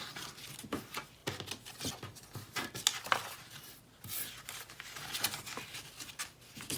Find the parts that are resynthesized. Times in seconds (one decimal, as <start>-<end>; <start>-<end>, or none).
none